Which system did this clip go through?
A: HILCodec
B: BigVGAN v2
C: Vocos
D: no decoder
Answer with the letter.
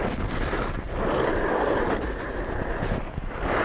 D